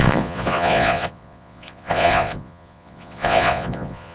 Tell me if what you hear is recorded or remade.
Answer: remade